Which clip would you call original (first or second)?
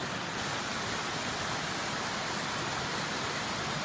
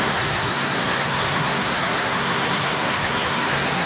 first